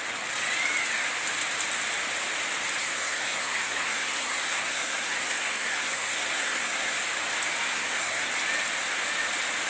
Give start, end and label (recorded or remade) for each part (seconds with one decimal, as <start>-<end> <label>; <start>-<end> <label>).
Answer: 0.0-2.8 recorded; 2.8-7.0 remade; 7.0-7.7 recorded; 7.7-8.3 remade; 8.3-9.7 recorded